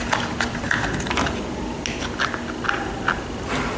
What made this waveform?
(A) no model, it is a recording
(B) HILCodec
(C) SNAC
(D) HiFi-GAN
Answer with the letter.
A